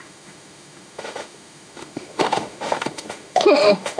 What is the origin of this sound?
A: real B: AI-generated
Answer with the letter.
B